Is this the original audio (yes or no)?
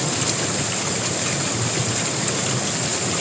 yes